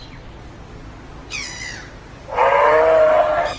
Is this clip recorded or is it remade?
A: recorded